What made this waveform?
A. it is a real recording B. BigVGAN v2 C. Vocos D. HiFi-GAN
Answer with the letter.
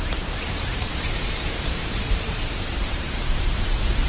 B